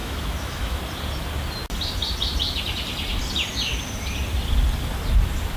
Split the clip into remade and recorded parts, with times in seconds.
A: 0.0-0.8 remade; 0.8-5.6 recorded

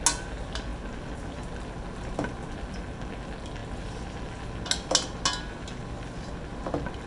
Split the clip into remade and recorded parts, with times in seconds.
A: 0.0-7.1 recorded

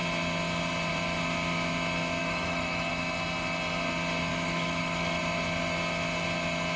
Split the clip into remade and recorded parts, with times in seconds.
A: 0.0-2.2 recorded; 2.2-2.9 remade; 2.9-4.3 recorded; 4.3-5.2 remade; 5.2-6.8 recorded

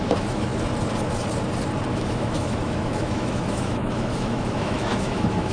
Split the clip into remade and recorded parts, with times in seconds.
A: 0.0-0.5 remade; 0.5-1.9 recorded; 1.9-5.5 remade

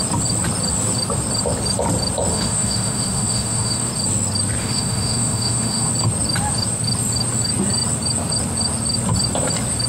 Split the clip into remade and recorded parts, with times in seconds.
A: 0.0-2.3 recorded; 2.3-3.9 remade; 3.9-4.6 recorded; 4.6-5.9 remade; 5.9-9.9 recorded

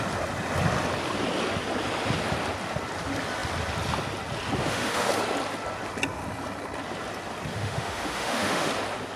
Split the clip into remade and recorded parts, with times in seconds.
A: 0.0-4.6 recorded; 4.6-5.1 remade; 5.1-7.5 recorded; 7.5-8.7 remade; 8.7-9.2 recorded

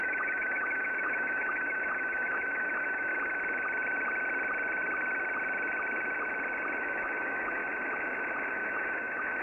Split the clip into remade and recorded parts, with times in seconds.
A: 0.0-3.1 remade; 3.1-6.8 recorded; 6.8-7.6 remade; 7.6-8.5 recorded; 8.5-9.4 remade